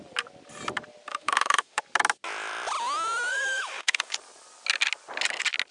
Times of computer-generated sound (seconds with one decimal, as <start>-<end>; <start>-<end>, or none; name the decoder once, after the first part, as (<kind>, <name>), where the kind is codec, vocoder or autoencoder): 1.1-1.8 (autoencoder, DAC-VAE); 3.3-4.1